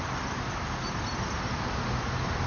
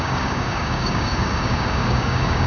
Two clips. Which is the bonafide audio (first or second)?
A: first